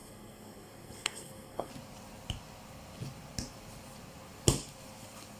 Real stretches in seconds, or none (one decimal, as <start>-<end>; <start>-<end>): 1.7-5.4